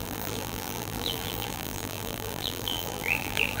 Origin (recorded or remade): remade